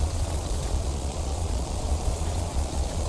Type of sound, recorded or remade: remade